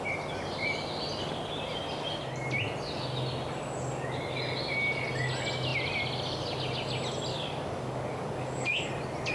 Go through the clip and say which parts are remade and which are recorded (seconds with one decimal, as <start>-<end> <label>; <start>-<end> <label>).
0.0-7.3 recorded; 7.3-8.9 remade; 8.9-9.3 recorded